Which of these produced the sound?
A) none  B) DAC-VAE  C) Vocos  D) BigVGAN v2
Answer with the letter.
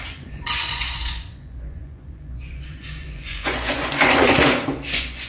C